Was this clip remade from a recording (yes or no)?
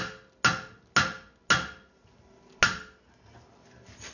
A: no